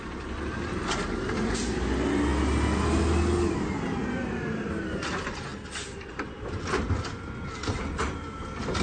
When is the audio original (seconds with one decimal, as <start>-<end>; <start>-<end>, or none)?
0.0-8.8